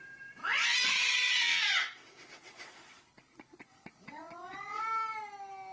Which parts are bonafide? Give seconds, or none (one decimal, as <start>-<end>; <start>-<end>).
0.0-0.4; 3.0-3.7; 4.8-5.7